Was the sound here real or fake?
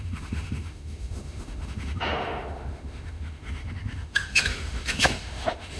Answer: fake